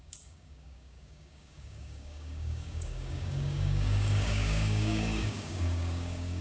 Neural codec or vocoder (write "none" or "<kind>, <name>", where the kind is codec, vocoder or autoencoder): codec, DAC